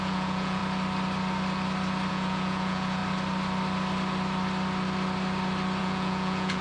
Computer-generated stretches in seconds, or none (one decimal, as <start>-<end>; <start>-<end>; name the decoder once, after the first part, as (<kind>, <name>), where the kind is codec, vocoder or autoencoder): 0.0-0.6 (vocoder, Vocos); 2.1-3.0; 5.8-6.6